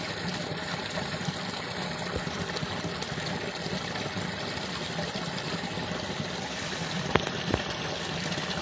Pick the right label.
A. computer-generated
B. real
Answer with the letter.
B